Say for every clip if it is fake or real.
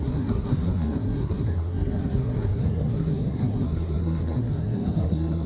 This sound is fake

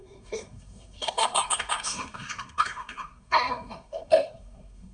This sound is fake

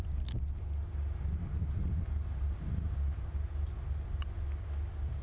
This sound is real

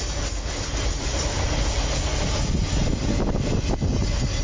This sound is real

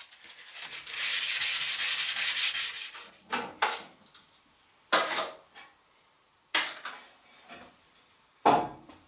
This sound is real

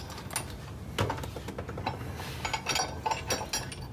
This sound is real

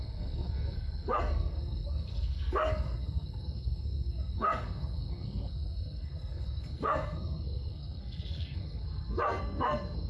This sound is fake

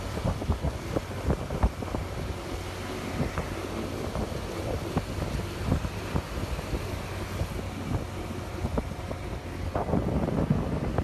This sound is real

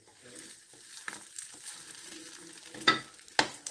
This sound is real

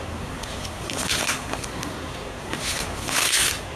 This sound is fake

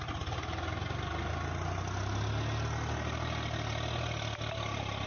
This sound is real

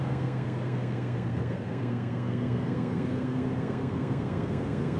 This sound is fake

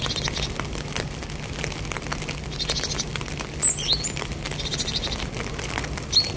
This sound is real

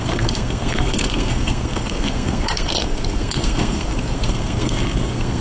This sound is fake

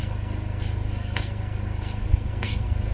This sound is fake